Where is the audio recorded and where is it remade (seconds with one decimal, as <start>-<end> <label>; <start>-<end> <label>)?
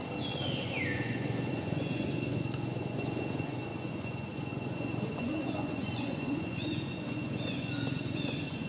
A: 0.0-0.6 recorded; 0.6-8.7 remade